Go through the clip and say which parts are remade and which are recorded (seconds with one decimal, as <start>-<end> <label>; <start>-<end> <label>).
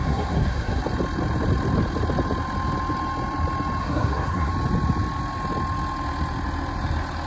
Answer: 0.0-0.8 remade; 0.8-3.8 recorded; 3.8-4.5 remade; 4.5-7.3 recorded